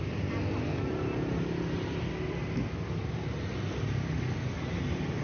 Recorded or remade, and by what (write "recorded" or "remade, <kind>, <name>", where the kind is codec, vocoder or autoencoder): recorded